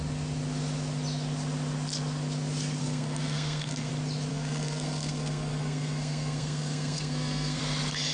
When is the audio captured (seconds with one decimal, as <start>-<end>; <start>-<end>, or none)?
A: 0.0-2.8; 3.9-4.3; 7.6-8.1